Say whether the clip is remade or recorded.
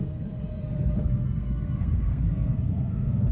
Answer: remade